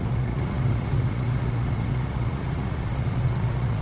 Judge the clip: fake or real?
fake